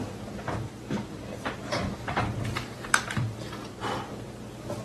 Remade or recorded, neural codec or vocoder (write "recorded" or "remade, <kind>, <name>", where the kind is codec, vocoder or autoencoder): remade, vocoder, BigVGAN v2